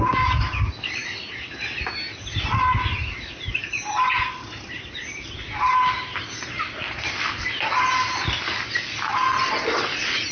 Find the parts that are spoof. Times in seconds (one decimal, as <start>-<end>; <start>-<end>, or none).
none